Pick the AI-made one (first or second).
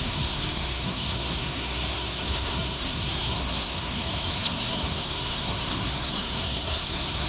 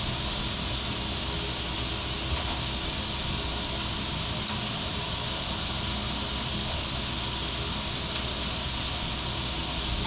first